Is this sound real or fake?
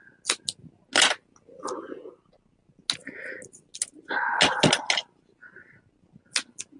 real